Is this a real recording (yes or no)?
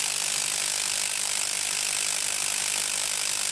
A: yes